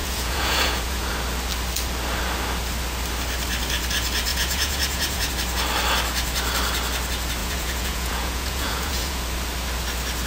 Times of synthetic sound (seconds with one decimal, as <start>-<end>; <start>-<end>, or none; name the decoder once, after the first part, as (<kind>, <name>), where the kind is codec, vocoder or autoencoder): 0.0-1.1 (vocoder, Vocos); 4.3-5.3; 7.4-9.2